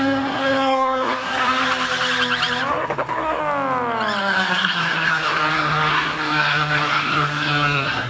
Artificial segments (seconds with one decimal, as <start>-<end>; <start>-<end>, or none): 0.0-1.6; 2.7-3.4; 4.2-8.1